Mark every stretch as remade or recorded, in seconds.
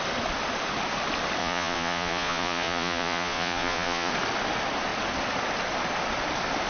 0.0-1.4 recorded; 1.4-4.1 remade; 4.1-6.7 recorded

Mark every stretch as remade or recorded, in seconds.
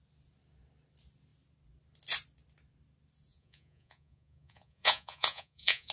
0.0-3.3 recorded; 3.3-5.9 remade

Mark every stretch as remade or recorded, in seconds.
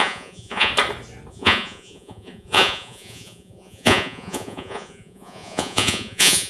0.0-0.7 remade; 0.7-1.3 recorded; 1.3-6.5 remade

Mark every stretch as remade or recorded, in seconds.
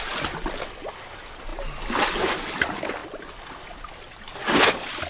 0.0-5.1 recorded